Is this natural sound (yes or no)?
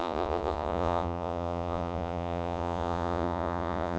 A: no